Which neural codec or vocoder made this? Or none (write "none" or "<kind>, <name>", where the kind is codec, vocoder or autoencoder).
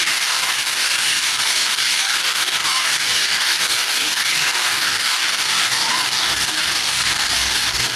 codec, DAC